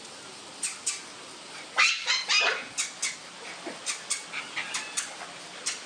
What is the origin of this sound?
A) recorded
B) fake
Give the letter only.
A